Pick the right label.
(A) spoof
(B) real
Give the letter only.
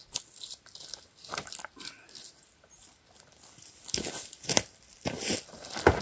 B